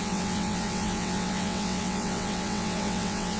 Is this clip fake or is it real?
fake